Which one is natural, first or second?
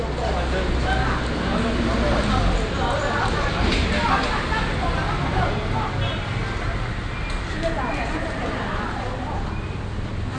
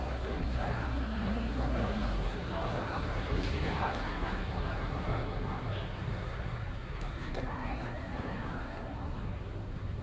first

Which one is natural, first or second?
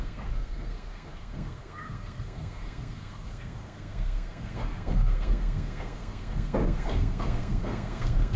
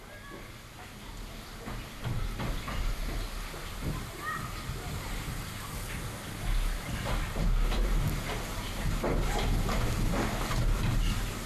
second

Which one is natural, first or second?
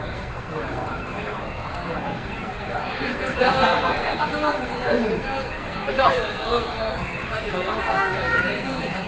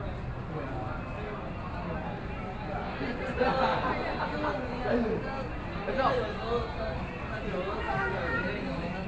second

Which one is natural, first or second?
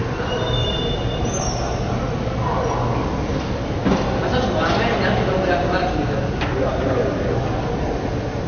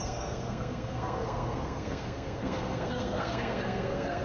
first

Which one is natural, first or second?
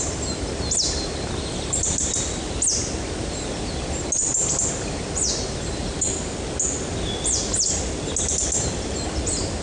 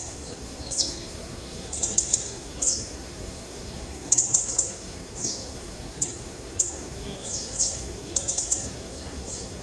first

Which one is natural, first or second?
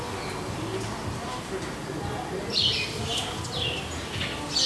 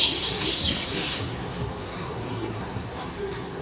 first